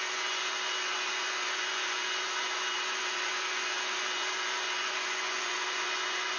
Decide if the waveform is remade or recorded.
remade